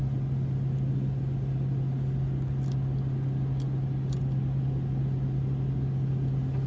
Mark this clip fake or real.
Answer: real